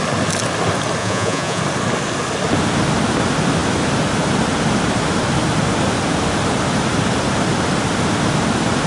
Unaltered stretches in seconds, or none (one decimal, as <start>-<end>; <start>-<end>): 0.0-1.0; 1.6-8.9